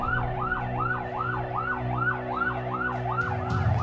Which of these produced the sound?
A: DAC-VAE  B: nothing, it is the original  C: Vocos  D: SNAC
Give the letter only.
B